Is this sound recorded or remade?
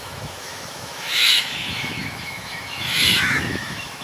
remade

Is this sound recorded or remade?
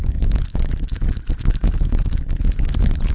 remade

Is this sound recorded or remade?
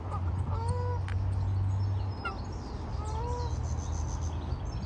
recorded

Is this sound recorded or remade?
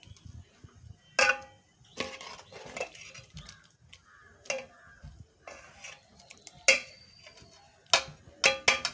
recorded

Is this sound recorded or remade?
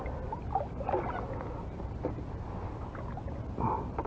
recorded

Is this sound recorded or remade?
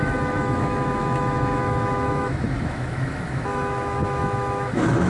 remade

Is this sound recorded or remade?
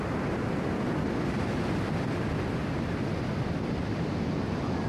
recorded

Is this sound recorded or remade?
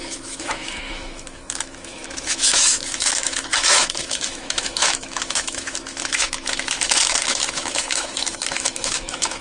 remade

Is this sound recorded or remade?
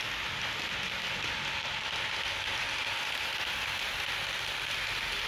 recorded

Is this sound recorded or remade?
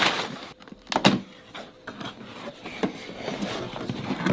recorded